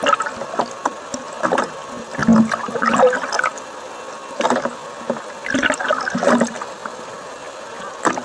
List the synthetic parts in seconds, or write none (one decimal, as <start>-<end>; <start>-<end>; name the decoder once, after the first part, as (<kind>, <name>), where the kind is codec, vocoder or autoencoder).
none